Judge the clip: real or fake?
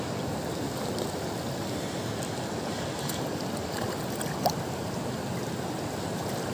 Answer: real